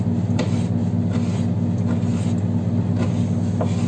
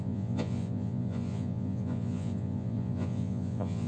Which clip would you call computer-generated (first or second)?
second